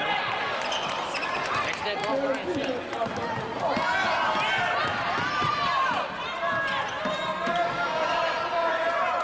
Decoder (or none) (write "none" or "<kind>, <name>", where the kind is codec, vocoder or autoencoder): none